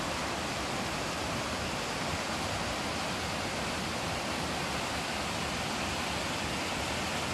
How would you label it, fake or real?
real